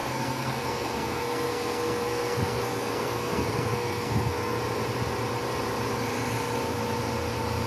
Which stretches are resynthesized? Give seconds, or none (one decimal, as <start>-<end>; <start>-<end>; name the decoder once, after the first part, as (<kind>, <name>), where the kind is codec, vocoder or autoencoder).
0.0-4.6 (codec, SNAC)